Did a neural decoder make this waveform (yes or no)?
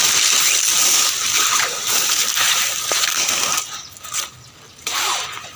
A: no